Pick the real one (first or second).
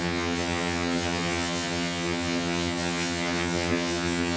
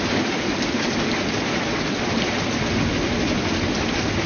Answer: second